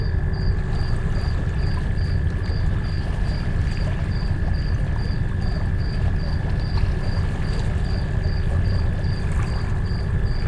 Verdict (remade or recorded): recorded